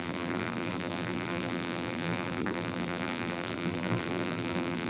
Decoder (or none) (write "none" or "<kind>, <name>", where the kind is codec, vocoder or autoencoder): vocoder, BigVGAN v2